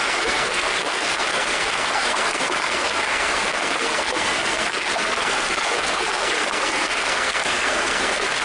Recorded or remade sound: remade